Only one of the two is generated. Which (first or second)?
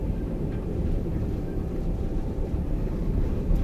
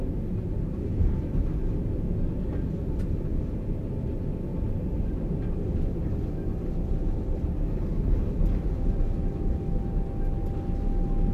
first